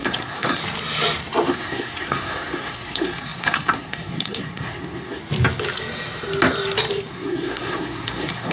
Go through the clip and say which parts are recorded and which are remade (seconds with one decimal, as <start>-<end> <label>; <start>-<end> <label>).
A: 0.0-0.6 remade; 0.6-1.5 recorded; 1.5-5.2 remade; 5.2-7.1 recorded; 7.1-8.5 remade